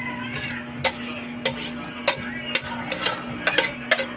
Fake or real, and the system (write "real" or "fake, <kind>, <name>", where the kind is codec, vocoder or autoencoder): real